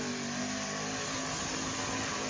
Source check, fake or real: real